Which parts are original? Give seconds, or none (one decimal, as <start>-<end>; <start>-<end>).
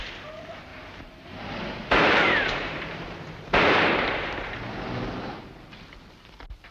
0.0-0.7; 4.7-6.7